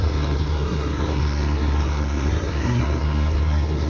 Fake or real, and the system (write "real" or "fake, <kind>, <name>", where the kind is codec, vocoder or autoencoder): fake, codec, SNAC